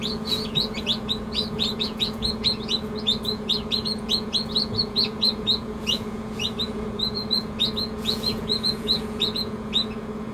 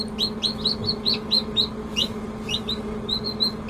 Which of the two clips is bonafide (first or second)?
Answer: second